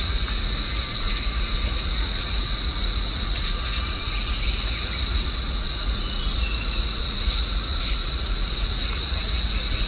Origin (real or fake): fake